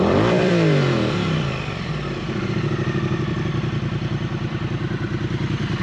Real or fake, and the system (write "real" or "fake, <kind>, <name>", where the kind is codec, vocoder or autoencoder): fake, vocoder, BigVGAN v2